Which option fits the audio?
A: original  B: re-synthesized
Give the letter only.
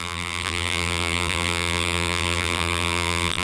B